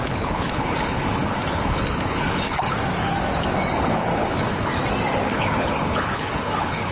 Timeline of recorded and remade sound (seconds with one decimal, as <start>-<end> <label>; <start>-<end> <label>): 0.0-2.7 remade; 2.7-3.7 recorded; 3.7-4.7 remade; 4.7-5.3 recorded; 5.3-6.9 remade